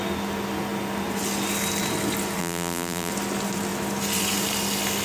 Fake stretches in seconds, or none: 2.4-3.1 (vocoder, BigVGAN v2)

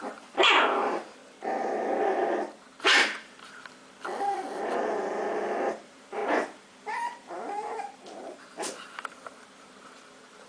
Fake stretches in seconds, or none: 0.0-1.2 (vocoder, BigVGAN v2); 2.8-3.8; 5.7-10.5

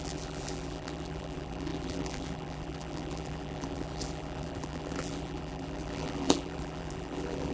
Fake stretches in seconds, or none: 0.0-7.5 (vocoder, BigVGAN v2)